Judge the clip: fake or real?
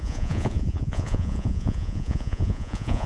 fake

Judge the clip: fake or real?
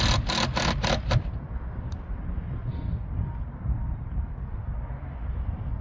real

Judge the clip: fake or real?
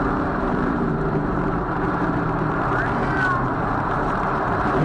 fake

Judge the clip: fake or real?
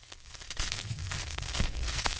fake